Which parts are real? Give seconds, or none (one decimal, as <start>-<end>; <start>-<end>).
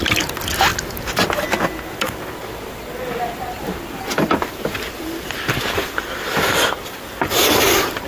0.0-8.1